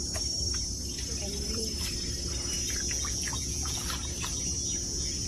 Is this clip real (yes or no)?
yes